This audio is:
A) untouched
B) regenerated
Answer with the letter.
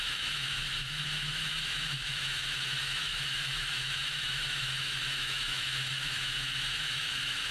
B